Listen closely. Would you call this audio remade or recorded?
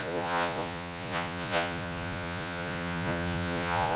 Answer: remade